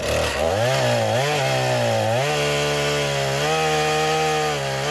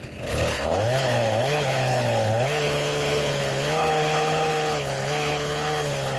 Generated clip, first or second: second